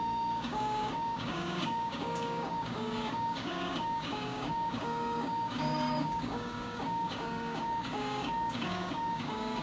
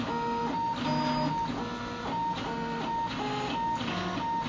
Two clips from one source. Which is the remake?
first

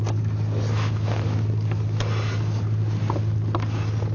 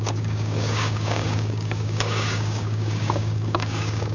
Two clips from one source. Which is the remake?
second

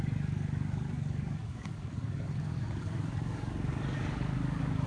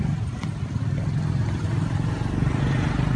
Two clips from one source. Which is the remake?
first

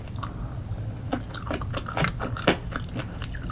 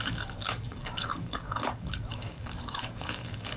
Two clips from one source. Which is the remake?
second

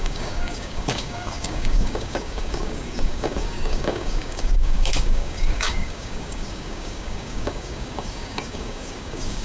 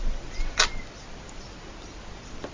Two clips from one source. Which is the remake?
first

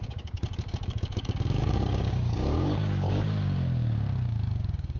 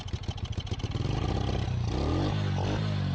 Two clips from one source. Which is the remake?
first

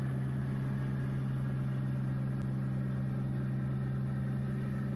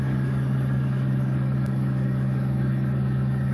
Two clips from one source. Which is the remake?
second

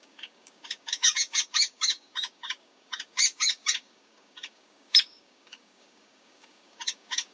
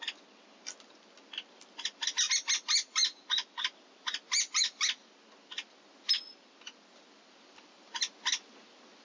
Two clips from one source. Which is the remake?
first